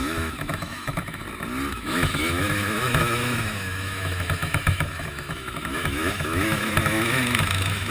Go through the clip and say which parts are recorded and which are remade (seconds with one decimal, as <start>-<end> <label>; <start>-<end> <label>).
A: 0.0-1.2 remade; 1.2-1.7 recorded; 1.7-7.9 remade